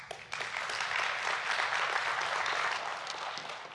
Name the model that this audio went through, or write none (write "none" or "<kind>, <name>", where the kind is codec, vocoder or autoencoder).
none